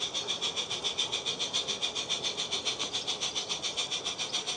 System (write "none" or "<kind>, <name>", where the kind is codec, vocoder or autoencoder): none